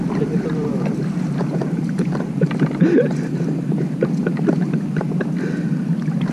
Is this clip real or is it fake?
real